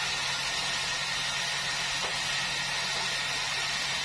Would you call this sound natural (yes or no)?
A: yes